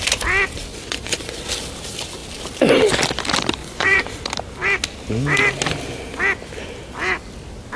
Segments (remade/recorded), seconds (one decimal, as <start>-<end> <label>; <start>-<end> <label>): 0.0-0.7 recorded; 0.7-1.4 remade; 1.4-3.6 recorded; 3.6-4.2 remade; 4.2-7.8 recorded